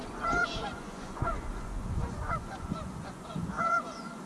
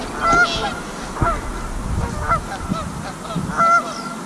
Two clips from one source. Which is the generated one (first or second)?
first